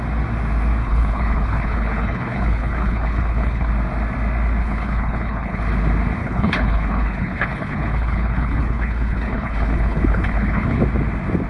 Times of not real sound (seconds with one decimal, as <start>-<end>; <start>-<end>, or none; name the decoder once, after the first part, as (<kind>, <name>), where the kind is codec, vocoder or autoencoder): 0.8-3.7 (codec, HILCodec); 4.6-5.6; 6.2-10.8